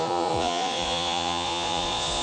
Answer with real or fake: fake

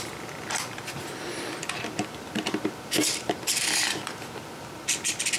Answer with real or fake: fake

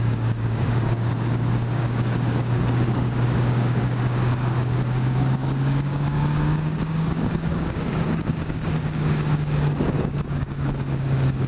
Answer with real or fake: fake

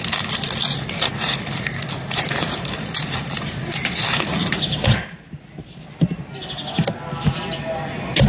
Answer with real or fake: real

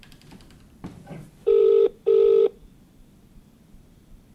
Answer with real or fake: fake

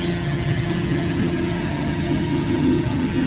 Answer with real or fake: fake